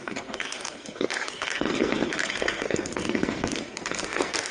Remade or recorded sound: remade